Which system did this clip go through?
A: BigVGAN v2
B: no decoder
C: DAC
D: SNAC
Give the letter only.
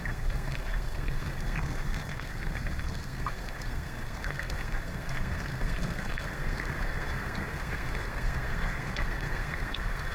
D